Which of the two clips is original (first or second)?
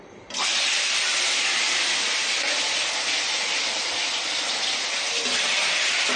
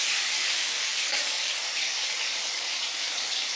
first